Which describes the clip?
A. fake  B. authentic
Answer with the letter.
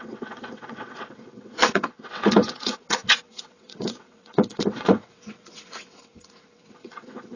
A